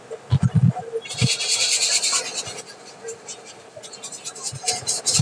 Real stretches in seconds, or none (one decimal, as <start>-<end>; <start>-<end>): 0.0-5.2